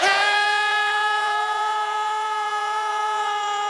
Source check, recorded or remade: remade